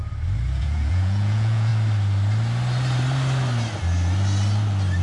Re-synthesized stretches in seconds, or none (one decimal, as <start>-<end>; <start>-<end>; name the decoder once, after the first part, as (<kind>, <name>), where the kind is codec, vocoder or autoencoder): 0.6-1.7 (vocoder, Vocos)